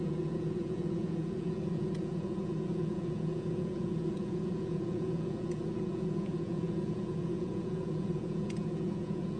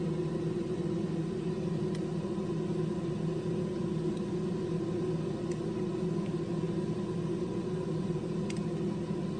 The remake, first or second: first